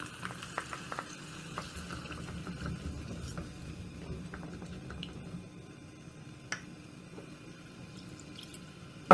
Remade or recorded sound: recorded